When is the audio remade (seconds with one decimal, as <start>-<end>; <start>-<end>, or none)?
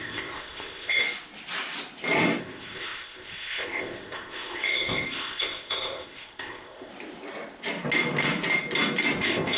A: 0.0-1.0; 2.4-6.9; 9.2-9.6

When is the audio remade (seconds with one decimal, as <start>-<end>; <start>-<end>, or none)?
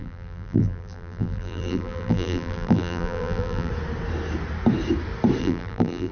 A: 0.0-3.7; 5.4-6.1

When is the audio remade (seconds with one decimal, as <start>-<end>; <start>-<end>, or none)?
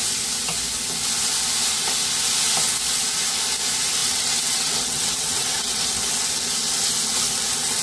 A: 4.0-5.8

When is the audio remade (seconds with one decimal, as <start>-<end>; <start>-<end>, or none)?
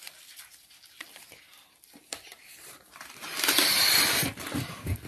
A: 2.3-4.6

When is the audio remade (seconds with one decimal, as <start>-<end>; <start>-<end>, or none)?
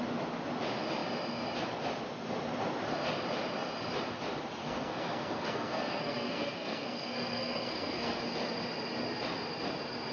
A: 4.6-8.2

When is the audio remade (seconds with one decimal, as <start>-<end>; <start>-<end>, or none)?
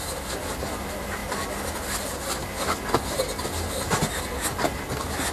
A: none